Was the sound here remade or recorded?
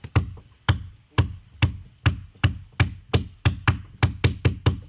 recorded